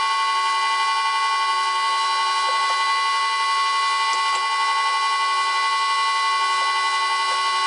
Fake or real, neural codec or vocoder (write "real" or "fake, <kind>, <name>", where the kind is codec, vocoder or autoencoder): real